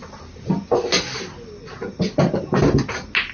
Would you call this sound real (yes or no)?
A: yes